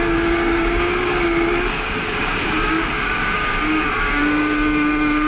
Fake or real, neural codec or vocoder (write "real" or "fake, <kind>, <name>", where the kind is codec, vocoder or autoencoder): fake, codec, DAC